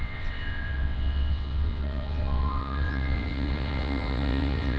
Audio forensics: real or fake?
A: fake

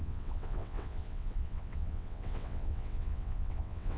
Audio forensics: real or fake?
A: fake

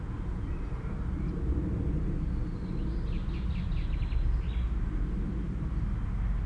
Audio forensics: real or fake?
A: real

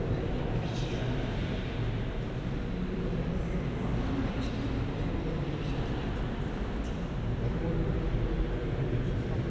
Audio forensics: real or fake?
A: real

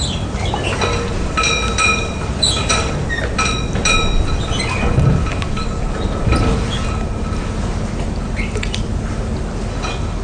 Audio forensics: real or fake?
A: real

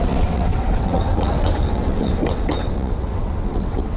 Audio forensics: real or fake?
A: fake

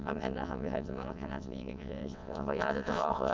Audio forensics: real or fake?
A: fake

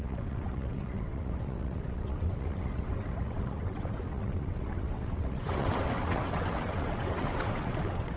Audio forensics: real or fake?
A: fake